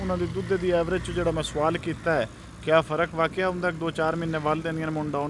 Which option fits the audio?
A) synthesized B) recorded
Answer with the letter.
B